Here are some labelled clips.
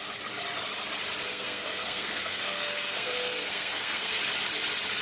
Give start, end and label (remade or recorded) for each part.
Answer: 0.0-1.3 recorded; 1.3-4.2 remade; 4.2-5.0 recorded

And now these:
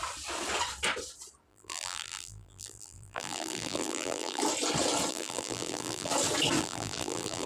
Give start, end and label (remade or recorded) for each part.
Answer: 0.0-1.5 recorded; 1.5-4.4 remade; 4.4-5.1 recorded; 5.1-6.1 remade; 6.1-6.6 recorded; 6.6-7.5 remade

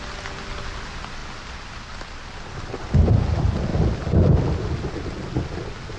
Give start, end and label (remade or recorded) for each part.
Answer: 0.0-6.0 recorded

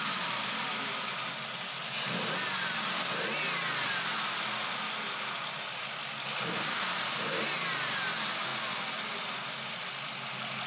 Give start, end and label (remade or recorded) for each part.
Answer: 0.0-10.7 recorded

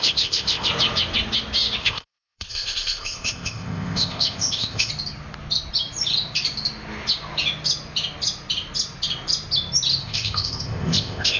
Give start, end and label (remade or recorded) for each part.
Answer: 0.0-0.7 remade; 0.7-1.8 recorded; 1.8-4.9 remade; 4.9-10.0 recorded; 10.0-11.4 remade

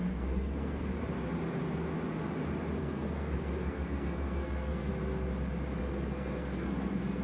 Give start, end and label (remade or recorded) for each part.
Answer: 0.0-0.9 remade; 0.9-2.8 recorded; 2.8-4.9 remade; 4.9-5.8 recorded; 5.8-7.2 remade

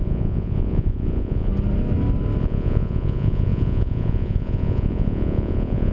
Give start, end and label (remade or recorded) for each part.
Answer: 0.0-1.5 remade; 1.5-2.4 recorded; 2.4-5.9 remade

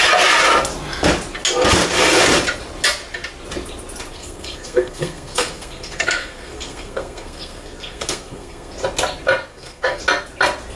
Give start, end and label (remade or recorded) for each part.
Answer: 0.0-4.1 recorded; 4.1-8.7 remade; 8.7-9.5 recorded; 9.5-10.0 remade; 10.0-10.8 recorded